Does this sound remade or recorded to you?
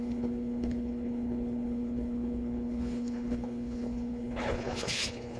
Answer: remade